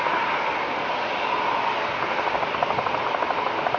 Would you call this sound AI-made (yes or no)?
no